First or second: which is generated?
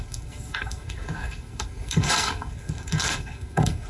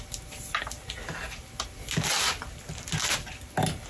first